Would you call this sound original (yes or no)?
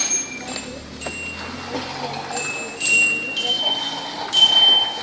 yes